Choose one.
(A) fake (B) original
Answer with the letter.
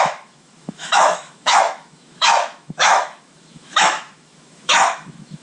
A